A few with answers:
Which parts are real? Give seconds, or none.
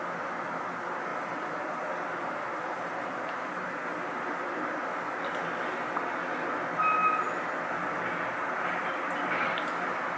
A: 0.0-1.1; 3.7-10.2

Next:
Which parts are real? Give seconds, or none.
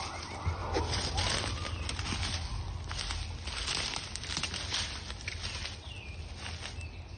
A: 0.0-7.2